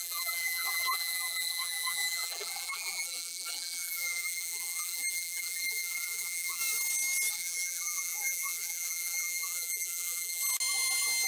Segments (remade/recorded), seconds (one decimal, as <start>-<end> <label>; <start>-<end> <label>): 0.0-6.6 remade; 6.6-7.3 recorded; 7.3-10.4 remade; 10.4-11.3 recorded